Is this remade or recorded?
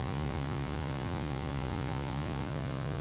remade